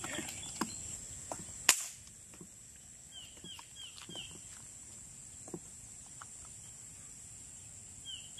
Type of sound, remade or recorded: recorded